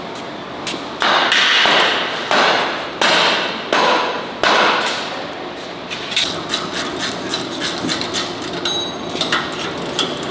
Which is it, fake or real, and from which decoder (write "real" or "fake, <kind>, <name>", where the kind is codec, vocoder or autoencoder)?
real